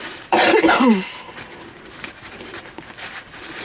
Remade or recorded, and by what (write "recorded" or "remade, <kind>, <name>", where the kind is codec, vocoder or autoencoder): remade, vocoder, BigVGAN v2